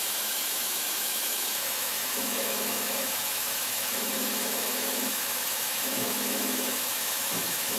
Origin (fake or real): fake